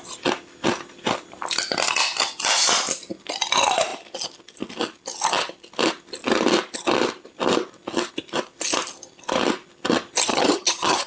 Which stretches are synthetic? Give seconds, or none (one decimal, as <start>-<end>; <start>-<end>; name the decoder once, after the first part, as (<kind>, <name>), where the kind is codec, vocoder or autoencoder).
10.3-11.1 (vocoder, HiFi-GAN)